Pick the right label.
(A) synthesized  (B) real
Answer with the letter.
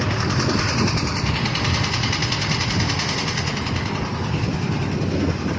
B